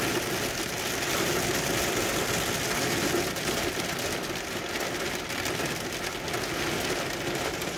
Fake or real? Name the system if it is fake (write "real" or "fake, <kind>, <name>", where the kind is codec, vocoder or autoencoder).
real